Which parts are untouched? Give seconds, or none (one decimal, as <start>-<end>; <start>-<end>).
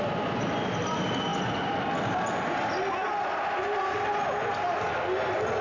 0.0-5.6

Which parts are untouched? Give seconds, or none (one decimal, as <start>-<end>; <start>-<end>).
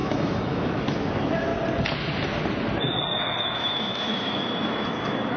1.5-3.4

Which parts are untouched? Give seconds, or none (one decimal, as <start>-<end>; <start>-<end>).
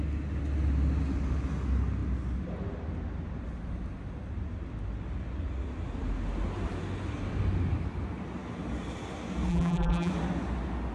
0.0-9.5; 10.1-10.9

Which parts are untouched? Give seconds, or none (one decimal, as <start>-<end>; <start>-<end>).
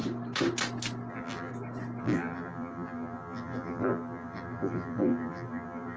0.0-1.1; 1.5-2.0